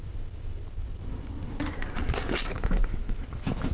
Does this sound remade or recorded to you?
recorded